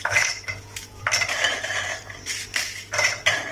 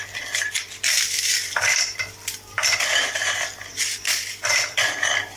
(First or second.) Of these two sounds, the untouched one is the second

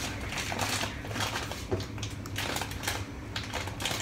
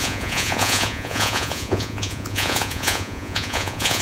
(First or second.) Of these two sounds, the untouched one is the first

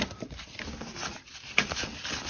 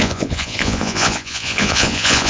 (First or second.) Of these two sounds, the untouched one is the first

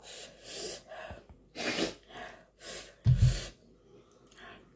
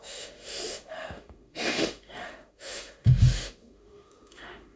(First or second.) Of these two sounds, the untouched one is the first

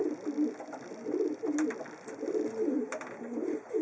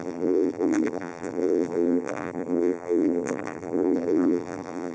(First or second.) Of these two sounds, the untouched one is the first